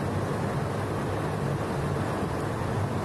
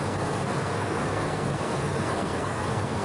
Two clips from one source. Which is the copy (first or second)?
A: second